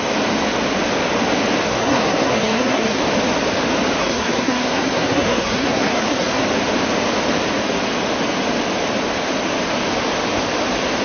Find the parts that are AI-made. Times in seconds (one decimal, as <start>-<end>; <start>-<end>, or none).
1.6-3.0; 4.0-6.4